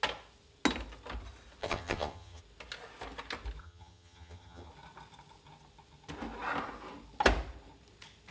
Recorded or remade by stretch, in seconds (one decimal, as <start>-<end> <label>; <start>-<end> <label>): 0.0-1.6 recorded; 1.6-2.4 remade; 2.4-3.6 recorded; 3.6-4.7 remade; 4.7-8.3 recorded